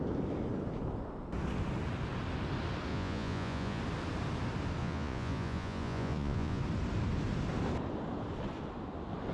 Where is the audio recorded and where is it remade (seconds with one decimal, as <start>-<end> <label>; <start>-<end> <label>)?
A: 0.0-2.9 recorded; 2.9-3.8 remade; 3.8-4.8 recorded; 4.8-6.6 remade; 6.6-9.3 recorded